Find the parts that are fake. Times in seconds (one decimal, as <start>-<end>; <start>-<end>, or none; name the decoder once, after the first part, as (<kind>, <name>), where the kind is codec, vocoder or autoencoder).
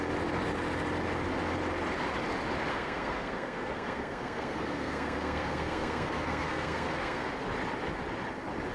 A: 2.7-7.3 (codec, SNAC)